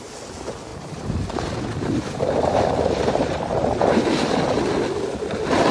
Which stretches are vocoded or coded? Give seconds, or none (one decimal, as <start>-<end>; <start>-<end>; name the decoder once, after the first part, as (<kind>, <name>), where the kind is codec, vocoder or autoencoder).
0.7-4.1 (vocoder, BigVGAN v2)